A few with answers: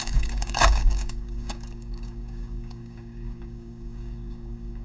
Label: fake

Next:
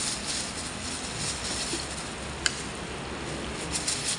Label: real